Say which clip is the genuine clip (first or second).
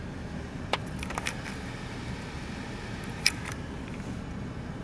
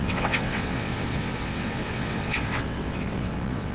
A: first